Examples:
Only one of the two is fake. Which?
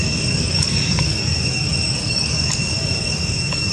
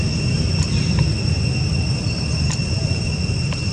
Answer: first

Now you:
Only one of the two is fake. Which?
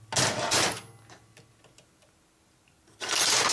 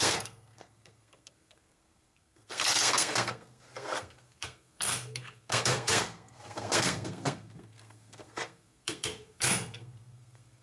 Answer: second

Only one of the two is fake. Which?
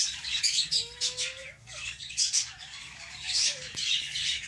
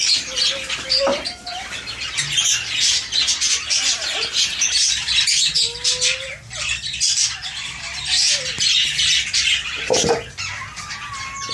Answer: first